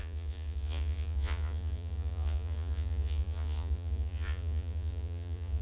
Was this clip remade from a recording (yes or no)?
yes